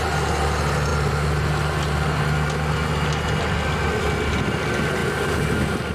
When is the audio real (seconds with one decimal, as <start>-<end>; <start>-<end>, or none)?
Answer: 0.0-5.0; 5.5-5.9